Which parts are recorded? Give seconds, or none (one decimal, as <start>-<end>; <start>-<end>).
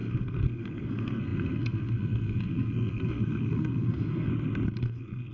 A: 4.3-4.8